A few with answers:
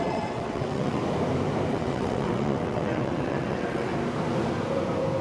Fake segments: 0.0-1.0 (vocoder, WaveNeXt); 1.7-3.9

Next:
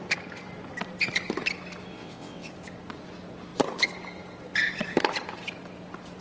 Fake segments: 1.9-2.5 (vocoder, WaveNeXt)

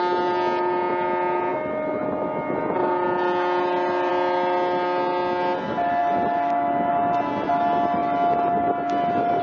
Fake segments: none